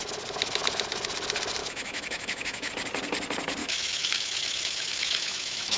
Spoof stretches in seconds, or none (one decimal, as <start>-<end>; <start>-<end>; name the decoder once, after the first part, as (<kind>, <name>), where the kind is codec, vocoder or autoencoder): 1.6-2.7 (autoencoder, DAC-VAE); 3.6-5.8